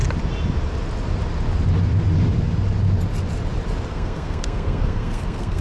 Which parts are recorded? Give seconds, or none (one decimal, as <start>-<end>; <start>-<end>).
0.0-3.9